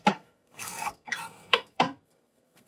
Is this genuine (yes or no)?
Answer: no